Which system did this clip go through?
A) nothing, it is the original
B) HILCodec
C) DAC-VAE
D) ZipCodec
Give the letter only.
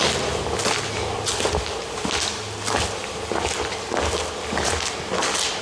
A